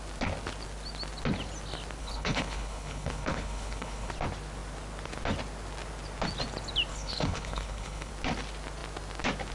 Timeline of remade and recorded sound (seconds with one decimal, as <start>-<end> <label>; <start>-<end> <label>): 0.0-2.0 recorded; 2.0-4.1 remade; 4.1-6.9 recorded; 6.9-8.1 remade; 8.1-9.5 recorded